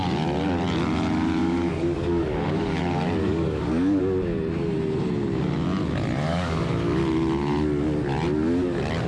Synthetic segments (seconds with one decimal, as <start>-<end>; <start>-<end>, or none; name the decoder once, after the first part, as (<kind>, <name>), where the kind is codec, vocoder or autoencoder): 1.4-2.8 (codec, DAC); 3.2-4.0; 6.3-7.0

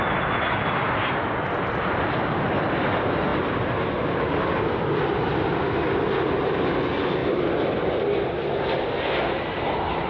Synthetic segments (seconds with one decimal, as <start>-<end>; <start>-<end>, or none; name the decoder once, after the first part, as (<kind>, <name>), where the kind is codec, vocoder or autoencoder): none